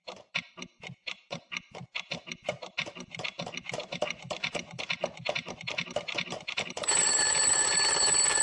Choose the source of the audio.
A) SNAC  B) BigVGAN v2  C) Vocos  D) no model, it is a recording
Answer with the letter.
B